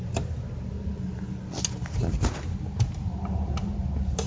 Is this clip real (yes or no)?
yes